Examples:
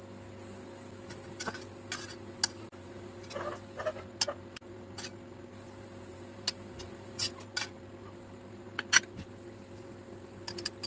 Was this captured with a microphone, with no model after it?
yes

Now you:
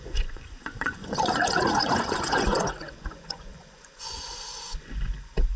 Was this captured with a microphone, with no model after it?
no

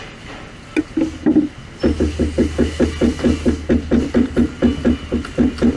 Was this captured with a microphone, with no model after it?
yes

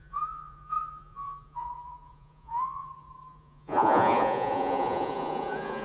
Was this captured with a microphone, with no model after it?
no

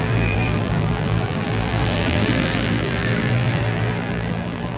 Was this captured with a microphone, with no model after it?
no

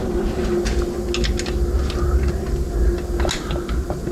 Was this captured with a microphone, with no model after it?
yes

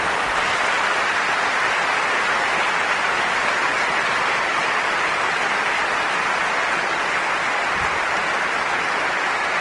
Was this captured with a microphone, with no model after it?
no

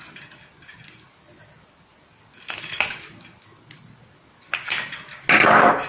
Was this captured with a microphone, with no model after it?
yes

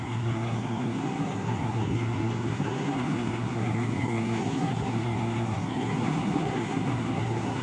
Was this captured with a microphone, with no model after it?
no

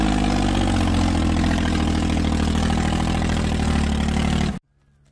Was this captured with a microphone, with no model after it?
yes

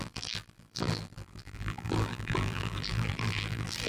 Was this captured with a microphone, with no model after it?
no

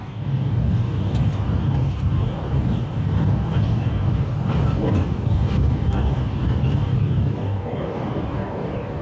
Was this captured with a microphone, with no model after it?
no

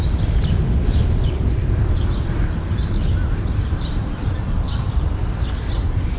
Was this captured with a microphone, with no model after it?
yes